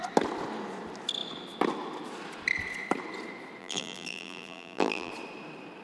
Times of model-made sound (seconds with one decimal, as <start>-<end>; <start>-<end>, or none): 3.6-5.1